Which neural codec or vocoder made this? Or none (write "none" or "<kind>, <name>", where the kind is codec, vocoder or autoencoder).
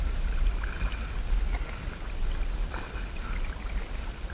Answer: none